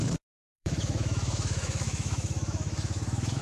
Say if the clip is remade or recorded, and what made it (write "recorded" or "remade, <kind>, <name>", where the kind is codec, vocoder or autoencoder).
remade, autoencoder, DAC-VAE